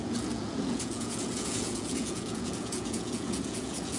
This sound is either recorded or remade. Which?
remade